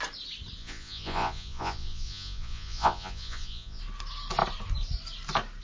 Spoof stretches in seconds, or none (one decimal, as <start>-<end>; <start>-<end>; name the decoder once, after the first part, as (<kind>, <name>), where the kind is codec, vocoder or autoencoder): 0.6-3.8 (vocoder, Vocos)